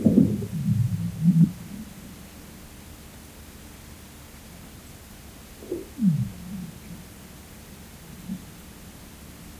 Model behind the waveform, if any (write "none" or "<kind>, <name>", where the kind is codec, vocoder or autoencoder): none